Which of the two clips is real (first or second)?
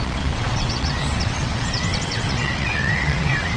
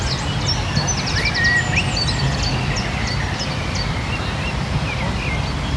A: second